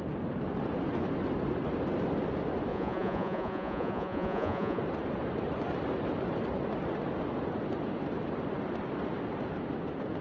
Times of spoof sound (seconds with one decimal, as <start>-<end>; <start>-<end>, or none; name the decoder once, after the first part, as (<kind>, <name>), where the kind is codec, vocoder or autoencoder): 2.7-4.8 (vocoder, Vocos)